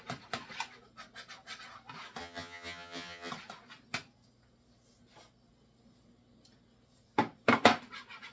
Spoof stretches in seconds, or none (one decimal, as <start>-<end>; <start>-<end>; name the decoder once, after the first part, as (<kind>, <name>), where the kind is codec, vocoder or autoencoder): 2.2-3.3 (vocoder, HiFi-GAN)